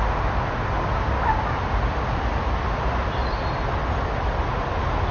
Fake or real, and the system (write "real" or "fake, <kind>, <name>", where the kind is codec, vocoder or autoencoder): real